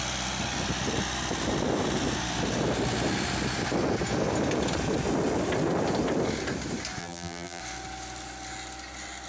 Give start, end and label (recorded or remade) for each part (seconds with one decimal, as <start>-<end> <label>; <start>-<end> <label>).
0.0-7.0 recorded; 7.0-7.6 remade; 7.6-9.3 recorded